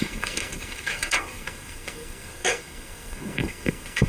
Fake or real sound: fake